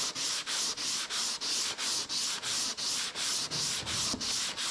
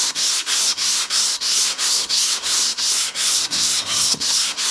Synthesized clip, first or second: second